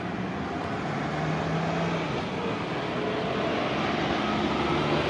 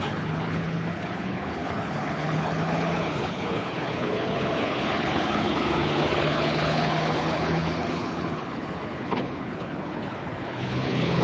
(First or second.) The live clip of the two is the first